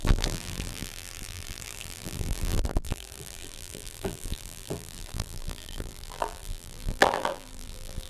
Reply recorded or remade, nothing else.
remade